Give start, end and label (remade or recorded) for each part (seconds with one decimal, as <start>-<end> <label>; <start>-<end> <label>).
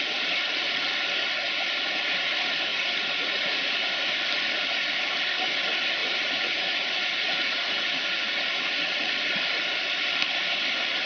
0.0-2.7 recorded; 2.7-3.9 remade; 3.9-6.0 recorded; 6.0-9.2 remade; 9.2-11.1 recorded